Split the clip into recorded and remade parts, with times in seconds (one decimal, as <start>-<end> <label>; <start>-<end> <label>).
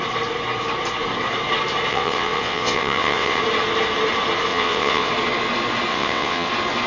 0.0-1.9 recorded; 1.9-3.4 remade; 3.4-4.5 recorded; 4.5-5.1 remade; 5.1-5.9 recorded; 5.9-6.5 remade; 6.5-6.9 recorded